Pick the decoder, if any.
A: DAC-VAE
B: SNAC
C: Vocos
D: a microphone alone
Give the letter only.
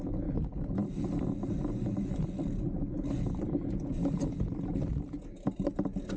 D